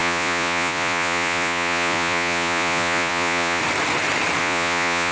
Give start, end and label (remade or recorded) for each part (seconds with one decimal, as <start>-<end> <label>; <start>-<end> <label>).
0.0-3.6 remade; 3.6-4.4 recorded; 4.4-5.1 remade